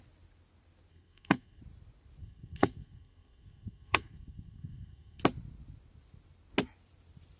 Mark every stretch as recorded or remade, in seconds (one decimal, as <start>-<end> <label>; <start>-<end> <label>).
0.0-0.9 recorded; 0.9-1.6 remade; 1.6-2.2 recorded; 2.2-5.2 remade; 5.2-7.4 recorded